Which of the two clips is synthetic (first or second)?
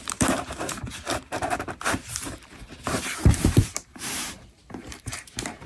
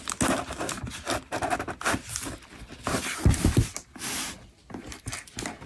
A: first